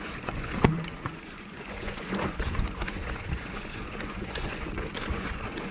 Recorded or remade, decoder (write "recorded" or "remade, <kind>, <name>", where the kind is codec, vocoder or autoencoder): remade, vocoder, Vocos